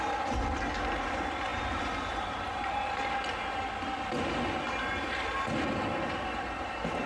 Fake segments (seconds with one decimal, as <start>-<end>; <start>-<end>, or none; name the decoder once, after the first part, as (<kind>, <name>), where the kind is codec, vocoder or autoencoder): none